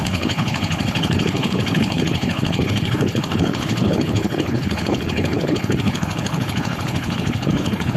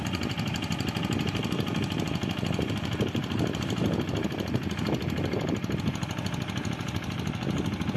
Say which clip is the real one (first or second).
second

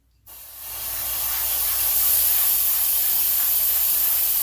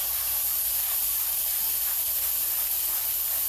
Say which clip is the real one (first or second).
first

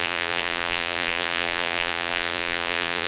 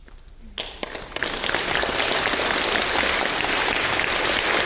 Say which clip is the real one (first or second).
second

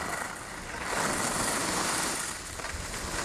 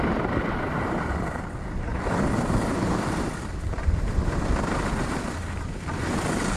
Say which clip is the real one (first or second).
first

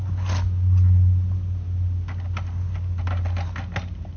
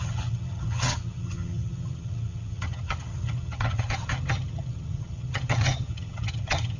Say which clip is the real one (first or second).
first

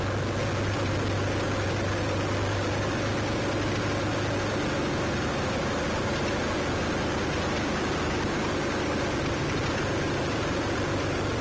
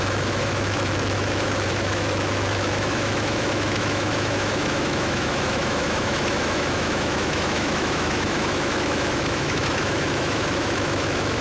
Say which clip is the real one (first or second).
first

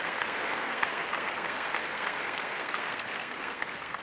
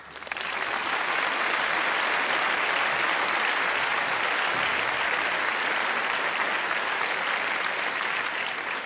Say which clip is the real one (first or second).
second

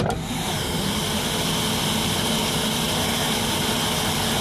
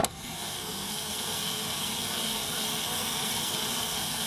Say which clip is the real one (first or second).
first